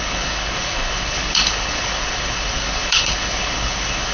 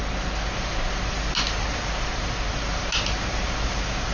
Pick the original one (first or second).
second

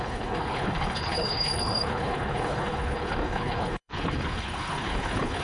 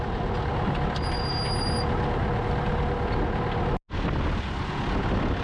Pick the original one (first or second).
second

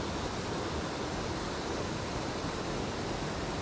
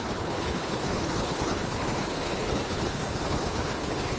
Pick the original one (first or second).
first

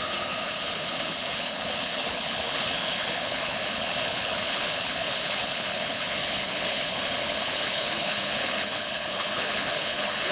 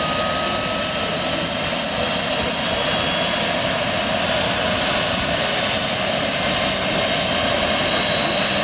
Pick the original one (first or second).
second